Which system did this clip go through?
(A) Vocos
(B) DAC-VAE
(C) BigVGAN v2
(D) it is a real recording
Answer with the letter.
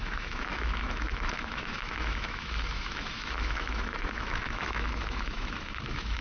B